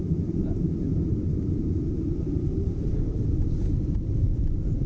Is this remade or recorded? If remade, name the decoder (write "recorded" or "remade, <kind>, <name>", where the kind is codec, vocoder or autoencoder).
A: remade, vocoder, BigVGAN v2